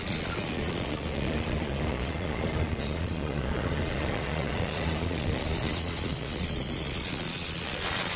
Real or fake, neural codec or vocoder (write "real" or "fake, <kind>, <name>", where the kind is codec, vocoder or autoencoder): fake, vocoder, Vocos